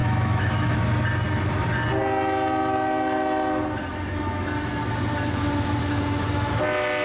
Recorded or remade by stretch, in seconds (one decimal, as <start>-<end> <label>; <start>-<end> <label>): 0.0-0.8 remade; 0.8-3.9 recorded; 3.9-4.7 remade; 4.7-5.8 recorded; 5.8-6.6 remade; 6.6-7.0 recorded